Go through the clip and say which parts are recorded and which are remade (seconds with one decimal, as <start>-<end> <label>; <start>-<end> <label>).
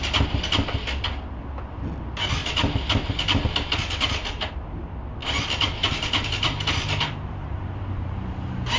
0.0-5.2 recorded; 5.2-8.3 remade; 8.3-8.8 recorded